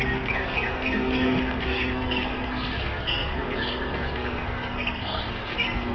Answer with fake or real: fake